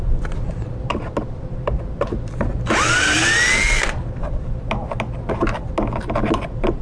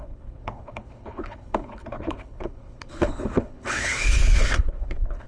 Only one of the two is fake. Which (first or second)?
second